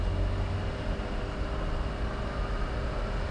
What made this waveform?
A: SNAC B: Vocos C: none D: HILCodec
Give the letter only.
C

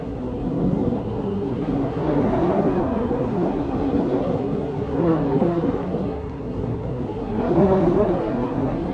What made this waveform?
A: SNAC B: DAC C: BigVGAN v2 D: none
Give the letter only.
A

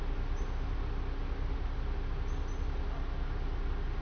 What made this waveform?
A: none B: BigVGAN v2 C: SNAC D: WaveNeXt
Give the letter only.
A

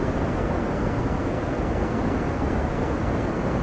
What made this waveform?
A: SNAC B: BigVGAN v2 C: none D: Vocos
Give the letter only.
A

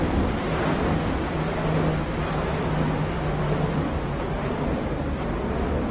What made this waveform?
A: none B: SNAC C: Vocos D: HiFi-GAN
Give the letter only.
A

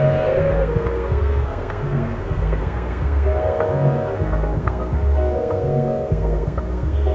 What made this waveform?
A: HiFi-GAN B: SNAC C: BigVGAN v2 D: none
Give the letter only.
B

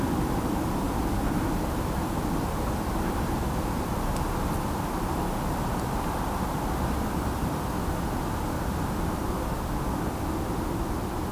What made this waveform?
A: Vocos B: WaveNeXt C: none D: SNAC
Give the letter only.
C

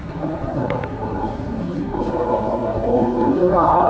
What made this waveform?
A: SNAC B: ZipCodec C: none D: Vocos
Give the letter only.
A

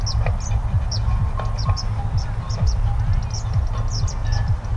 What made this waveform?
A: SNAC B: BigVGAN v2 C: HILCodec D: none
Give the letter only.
D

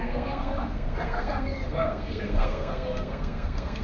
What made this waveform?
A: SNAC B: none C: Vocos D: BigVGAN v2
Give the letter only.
A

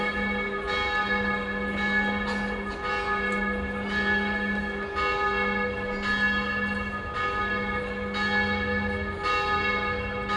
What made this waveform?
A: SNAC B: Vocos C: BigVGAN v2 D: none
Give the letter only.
D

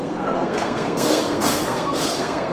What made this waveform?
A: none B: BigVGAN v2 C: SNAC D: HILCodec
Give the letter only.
C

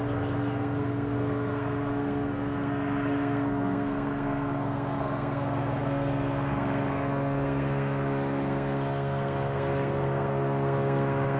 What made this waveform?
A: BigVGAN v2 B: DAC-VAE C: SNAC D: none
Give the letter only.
C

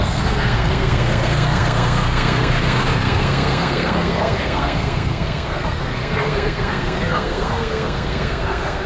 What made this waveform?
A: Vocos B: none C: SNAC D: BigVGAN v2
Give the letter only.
C